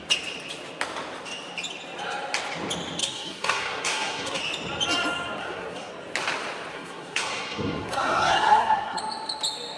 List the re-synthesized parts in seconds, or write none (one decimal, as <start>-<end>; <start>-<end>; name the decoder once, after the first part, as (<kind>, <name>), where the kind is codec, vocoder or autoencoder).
3.0-4.4 (codec, SNAC); 5.4-5.9; 6.7-9.0